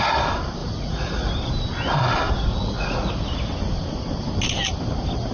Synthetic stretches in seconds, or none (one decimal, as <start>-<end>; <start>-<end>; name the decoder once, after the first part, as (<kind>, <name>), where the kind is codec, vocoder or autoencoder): 0.6-1.3 (vocoder, Vocos); 2.5-3.1